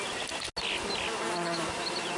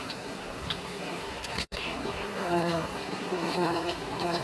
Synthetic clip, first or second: second